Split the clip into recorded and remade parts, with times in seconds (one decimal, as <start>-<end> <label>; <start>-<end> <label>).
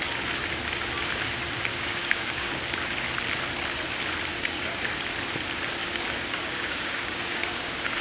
0.0-1.7 recorded; 1.7-2.6 remade; 2.6-4.3 recorded; 4.3-4.8 remade; 4.8-5.8 recorded; 5.8-8.0 remade